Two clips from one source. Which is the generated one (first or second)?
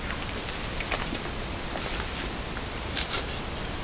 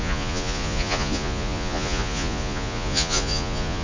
second